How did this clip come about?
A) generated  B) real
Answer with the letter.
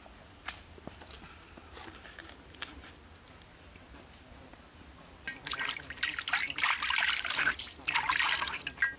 B